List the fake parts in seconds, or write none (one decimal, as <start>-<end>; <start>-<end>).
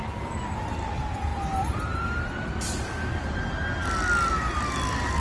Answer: none